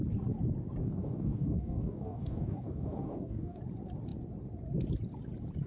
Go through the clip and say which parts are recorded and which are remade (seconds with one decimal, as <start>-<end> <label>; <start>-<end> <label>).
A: 0.0-0.8 recorded; 0.8-3.6 remade; 3.6-5.7 recorded